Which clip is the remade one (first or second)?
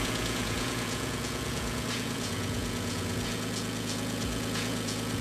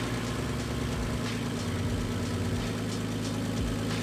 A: first